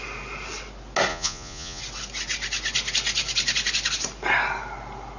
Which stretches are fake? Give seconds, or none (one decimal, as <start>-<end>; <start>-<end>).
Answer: 1.1-1.8